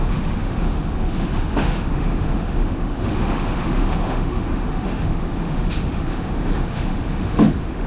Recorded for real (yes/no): no